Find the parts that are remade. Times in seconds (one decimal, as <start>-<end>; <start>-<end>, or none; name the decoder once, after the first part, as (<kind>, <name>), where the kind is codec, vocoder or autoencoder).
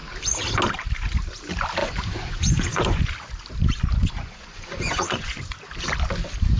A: 1.8-3.0 (vocoder, Vocos); 4.0-5.5